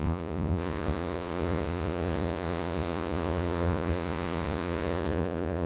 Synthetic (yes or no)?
yes